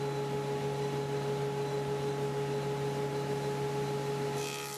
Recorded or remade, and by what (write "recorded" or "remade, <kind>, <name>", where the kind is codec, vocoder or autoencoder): recorded